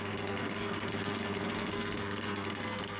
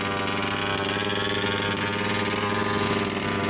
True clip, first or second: second